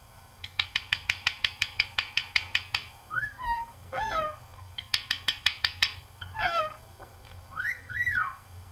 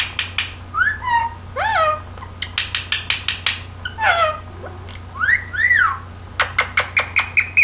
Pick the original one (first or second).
second